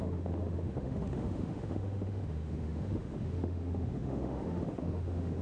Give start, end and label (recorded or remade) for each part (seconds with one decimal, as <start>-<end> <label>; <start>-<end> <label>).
0.0-5.4 remade